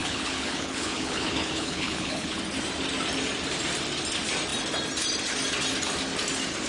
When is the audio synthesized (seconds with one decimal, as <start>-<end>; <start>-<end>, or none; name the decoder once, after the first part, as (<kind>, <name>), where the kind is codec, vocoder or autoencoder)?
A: 0.0-2.4 (codec, HILCodec)